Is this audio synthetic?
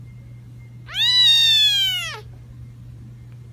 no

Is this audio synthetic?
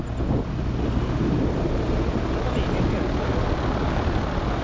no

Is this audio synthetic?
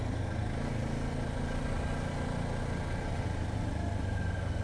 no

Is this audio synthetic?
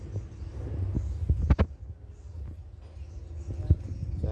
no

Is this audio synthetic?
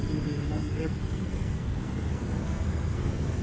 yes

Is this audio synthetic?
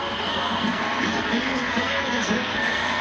yes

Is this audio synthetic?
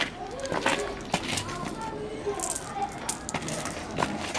no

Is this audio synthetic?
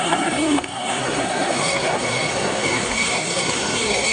yes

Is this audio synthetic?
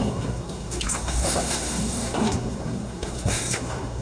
yes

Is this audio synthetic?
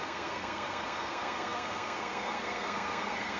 yes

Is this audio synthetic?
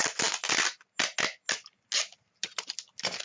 no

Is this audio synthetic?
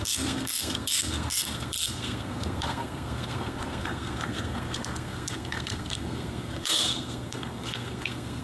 yes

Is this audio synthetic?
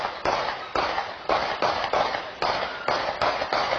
no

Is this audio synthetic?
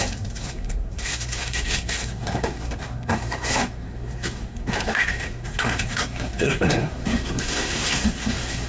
yes